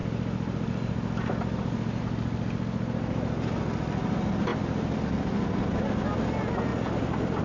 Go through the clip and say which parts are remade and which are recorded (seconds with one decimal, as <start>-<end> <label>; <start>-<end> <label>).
0.0-7.4 recorded